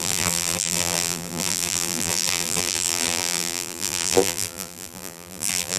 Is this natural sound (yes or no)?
no